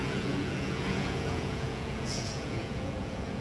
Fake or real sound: fake